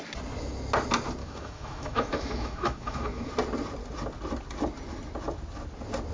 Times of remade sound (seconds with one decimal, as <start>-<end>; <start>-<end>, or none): 1.2-3.3